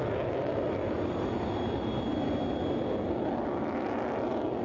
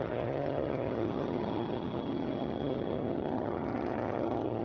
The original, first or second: first